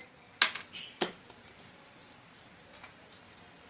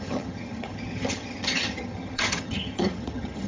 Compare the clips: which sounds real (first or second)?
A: first